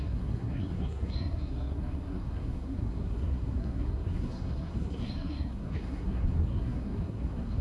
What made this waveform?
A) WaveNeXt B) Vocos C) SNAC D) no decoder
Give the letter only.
C